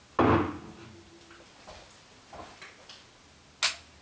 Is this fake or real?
real